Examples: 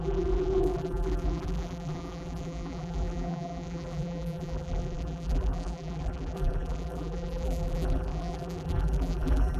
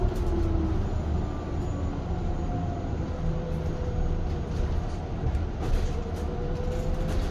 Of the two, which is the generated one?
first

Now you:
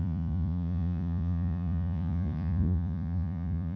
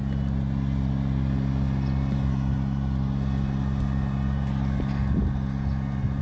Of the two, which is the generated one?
first